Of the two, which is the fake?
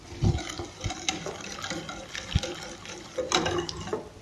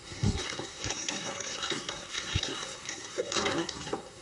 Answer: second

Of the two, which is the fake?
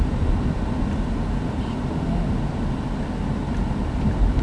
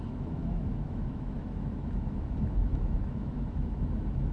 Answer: second